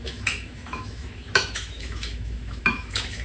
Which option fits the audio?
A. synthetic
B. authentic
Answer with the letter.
A